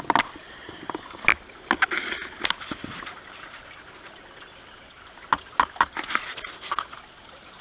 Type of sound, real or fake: real